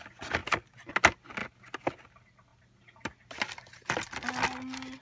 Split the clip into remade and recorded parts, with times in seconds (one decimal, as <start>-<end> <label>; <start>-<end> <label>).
0.0-5.0 recorded